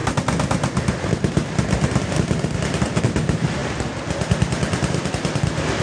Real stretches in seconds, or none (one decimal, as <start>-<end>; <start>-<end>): 0.0-5.8